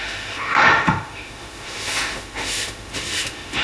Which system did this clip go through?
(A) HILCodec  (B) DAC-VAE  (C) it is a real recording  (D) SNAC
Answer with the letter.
B